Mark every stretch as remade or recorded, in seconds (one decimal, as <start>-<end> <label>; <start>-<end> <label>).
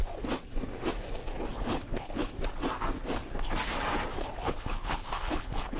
0.0-1.5 recorded; 1.5-2.4 remade; 2.4-4.1 recorded; 4.1-5.8 remade